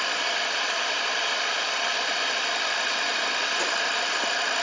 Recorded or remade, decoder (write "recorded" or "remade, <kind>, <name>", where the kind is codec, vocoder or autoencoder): recorded